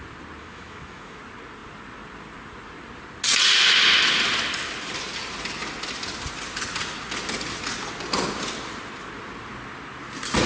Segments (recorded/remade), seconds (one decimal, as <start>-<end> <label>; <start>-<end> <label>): 0.0-0.4 recorded; 0.4-1.2 remade; 1.2-10.5 recorded